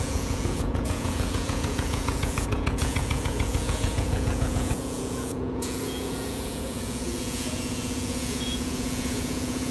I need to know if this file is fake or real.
fake